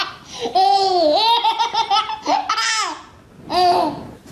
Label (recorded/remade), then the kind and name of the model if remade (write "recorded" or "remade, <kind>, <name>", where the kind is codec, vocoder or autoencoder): recorded